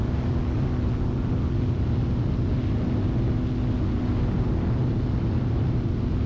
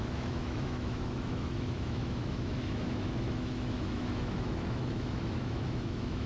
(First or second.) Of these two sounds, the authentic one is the first